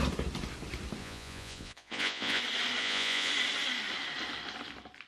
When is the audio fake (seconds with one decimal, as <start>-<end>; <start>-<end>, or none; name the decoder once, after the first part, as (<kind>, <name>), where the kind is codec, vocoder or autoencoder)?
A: 1.0-2.4 (vocoder, Vocos); 2.8-3.3